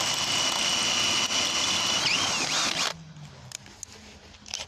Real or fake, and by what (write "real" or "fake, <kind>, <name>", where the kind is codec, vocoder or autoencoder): real